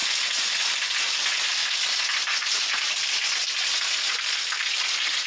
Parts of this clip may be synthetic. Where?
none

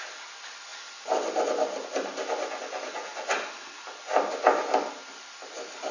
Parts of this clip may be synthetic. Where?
none